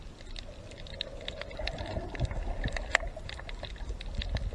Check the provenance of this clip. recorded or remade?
recorded